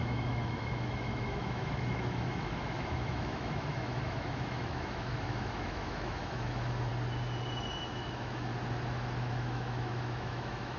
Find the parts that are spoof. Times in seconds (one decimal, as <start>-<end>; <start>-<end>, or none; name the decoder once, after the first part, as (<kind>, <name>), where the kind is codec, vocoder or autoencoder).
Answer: 0.0-6.9 (autoencoder, DAC-VAE); 7.7-8.5; 9.2-10.8